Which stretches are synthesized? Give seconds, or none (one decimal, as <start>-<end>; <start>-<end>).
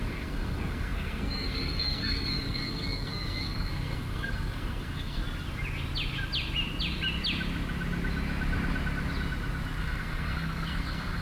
0.0-5.2; 9.8-11.2